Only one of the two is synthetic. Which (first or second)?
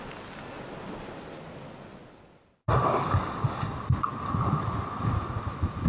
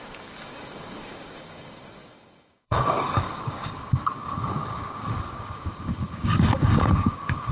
second